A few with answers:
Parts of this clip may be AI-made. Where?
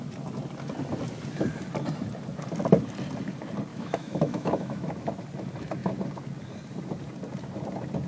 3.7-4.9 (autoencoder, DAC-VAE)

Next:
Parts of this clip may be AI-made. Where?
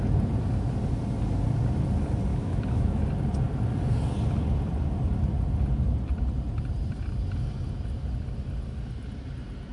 2.3-3.0 (autoencoder, DAC-VAE)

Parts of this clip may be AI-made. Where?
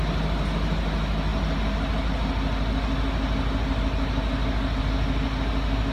none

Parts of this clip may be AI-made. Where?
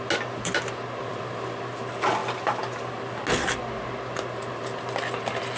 none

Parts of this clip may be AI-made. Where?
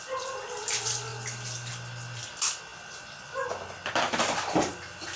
none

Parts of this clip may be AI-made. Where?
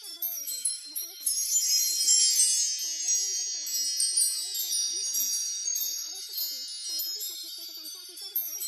0.0-2.2 (autoencoder, DAC-VAE); 4.7-6.4; 7.0-8.7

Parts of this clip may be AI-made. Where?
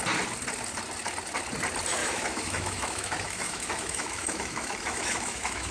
2.0-5.7 (autoencoder, DAC-VAE)